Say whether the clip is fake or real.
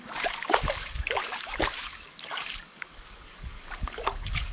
fake